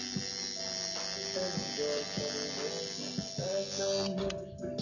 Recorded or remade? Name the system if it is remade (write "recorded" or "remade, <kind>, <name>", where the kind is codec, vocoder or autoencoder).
recorded